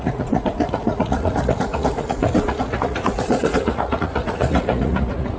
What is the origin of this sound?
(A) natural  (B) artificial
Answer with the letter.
B